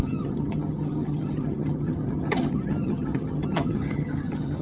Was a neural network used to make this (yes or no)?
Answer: yes